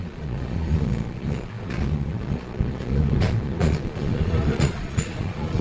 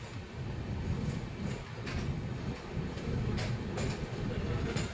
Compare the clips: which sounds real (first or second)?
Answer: second